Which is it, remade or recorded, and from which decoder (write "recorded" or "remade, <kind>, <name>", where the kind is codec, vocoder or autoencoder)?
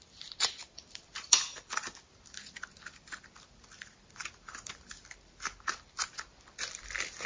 remade, vocoder, BigVGAN v2